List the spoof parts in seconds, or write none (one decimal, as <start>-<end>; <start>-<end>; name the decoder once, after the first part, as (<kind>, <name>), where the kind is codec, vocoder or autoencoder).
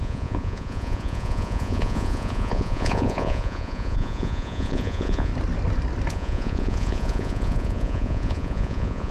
0.0-5.3 (vocoder, Vocos); 6.1-9.1